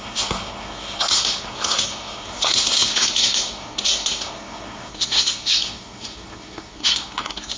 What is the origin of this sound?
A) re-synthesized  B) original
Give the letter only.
A